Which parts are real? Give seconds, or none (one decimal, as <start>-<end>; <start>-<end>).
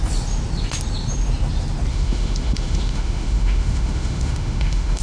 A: 0.0-1.9